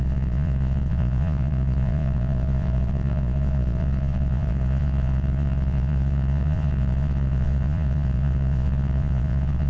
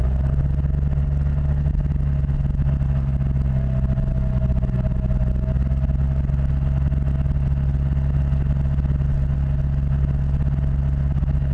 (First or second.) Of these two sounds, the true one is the second